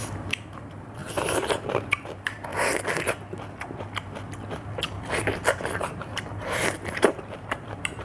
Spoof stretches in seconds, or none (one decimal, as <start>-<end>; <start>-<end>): 0.0-1.0; 1.7-2.5; 5.8-8.0